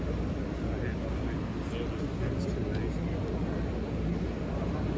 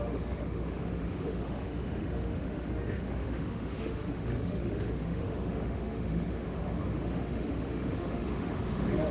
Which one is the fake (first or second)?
second